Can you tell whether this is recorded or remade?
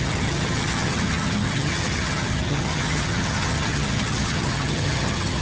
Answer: remade